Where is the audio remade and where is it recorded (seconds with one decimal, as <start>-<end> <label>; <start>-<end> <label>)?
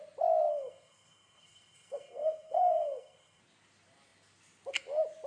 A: 0.0-0.5 recorded; 0.5-3.4 remade; 3.4-5.3 recorded